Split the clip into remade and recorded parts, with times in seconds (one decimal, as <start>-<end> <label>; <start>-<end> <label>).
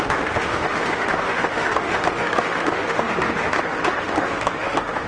0.0-5.1 remade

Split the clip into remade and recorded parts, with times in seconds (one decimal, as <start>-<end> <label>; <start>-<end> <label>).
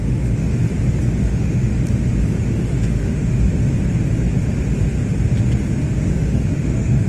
0.0-0.6 remade; 0.6-1.2 recorded; 1.2-1.7 remade; 1.7-2.4 recorded; 2.4-3.5 remade; 3.5-5.9 recorded; 5.9-7.1 remade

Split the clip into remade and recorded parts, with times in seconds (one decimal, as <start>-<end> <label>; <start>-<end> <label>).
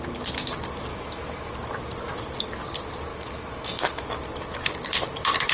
0.0-0.9 recorded; 0.9-1.5 remade; 1.5-3.1 recorded; 3.1-4.1 remade; 4.1-5.5 recorded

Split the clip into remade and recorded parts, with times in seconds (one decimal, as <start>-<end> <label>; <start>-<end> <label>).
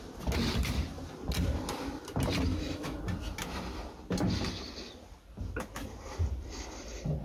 0.0-2.5 recorded; 2.5-3.0 remade; 3.0-7.2 recorded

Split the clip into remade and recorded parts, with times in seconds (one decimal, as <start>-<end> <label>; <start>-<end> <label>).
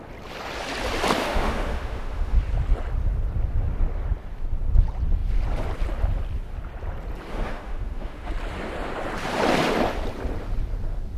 0.0-1.2 recorded; 1.2-2.4 remade; 2.4-7.3 recorded; 7.3-8.3 remade; 8.3-11.2 recorded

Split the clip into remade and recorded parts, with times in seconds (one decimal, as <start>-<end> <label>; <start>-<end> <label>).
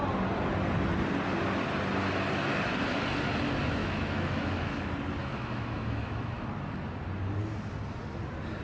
0.0-3.8 recorded; 3.8-4.8 remade; 4.8-5.2 recorded; 5.2-6.4 remade; 6.4-8.6 recorded